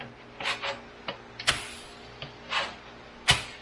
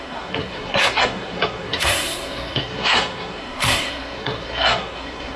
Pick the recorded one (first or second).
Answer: first